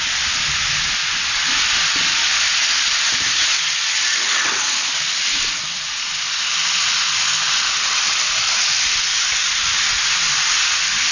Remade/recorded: recorded